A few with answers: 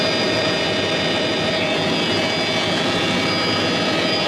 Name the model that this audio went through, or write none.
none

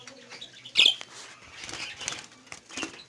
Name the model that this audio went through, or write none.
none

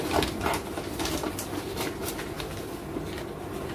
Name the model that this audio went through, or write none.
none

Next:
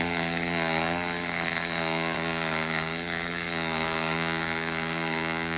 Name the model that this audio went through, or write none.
codec, DAC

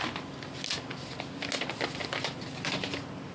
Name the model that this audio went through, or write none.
none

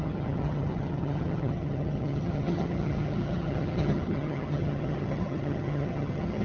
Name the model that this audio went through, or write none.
vocoder, HiFi-GAN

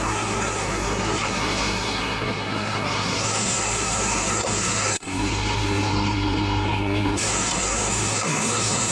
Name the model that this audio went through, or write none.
codec, SNAC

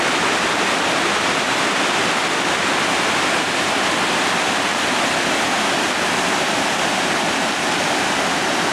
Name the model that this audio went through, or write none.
vocoder, BigVGAN v2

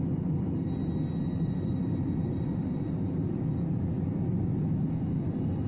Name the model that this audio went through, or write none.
none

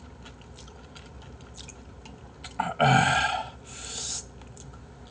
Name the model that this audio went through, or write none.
none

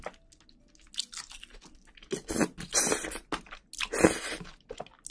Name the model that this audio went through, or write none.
none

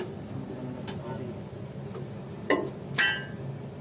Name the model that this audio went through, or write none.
none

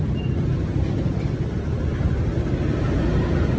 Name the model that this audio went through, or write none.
none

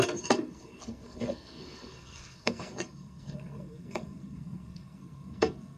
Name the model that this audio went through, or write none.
codec, SNAC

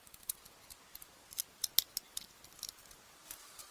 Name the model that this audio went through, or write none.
none